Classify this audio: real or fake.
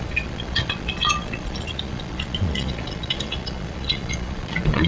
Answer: fake